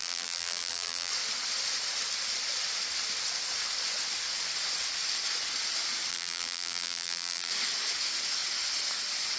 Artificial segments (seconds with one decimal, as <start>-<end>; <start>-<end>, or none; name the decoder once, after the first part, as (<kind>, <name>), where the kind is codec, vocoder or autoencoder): 0.0-1.1 (vocoder, BigVGAN v2); 6.1-7.5